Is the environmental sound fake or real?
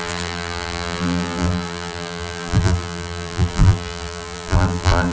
fake